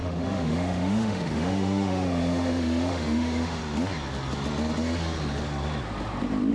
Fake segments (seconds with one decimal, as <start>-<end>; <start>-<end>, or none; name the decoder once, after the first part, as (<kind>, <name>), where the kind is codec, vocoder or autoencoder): 0.0-3.6 (autoencoder, DAC-VAE)